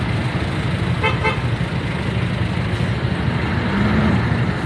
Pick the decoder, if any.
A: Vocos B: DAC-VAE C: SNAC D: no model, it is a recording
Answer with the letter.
D